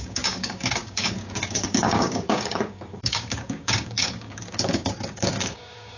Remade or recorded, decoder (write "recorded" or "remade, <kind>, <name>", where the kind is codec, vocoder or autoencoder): remade, codec, DAC